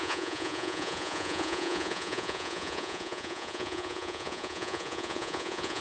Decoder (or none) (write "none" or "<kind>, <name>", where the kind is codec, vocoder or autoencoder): vocoder, Vocos